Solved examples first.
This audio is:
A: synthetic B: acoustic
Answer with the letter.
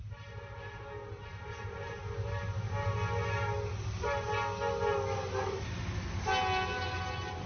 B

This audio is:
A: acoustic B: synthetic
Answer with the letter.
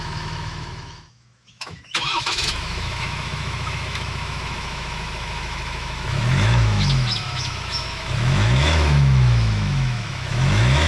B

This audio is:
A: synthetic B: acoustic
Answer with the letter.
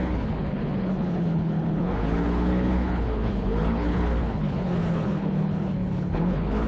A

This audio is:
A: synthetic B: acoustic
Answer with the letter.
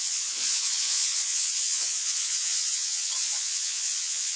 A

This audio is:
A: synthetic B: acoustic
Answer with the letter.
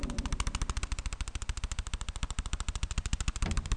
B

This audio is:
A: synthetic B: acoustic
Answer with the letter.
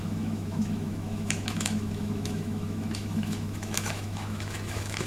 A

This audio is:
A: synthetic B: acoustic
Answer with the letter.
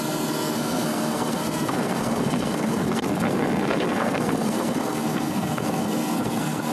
A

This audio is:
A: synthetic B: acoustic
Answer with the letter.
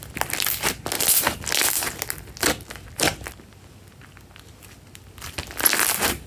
B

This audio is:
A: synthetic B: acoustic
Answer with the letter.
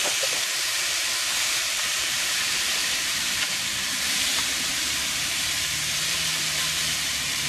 A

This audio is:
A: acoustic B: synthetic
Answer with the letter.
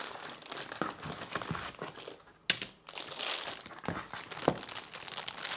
A